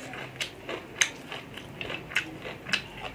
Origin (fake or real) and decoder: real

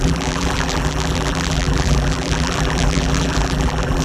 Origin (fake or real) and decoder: fake, vocoder, BigVGAN v2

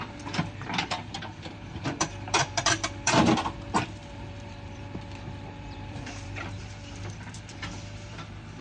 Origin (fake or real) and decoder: fake, vocoder, BigVGAN v2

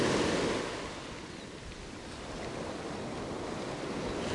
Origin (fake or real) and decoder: real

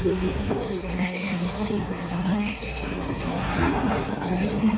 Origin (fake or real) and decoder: fake, codec, SNAC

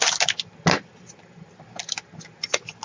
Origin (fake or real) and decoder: real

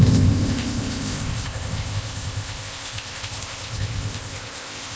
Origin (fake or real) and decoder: fake, codec, ZipCodec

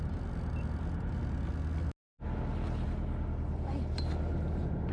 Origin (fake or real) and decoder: real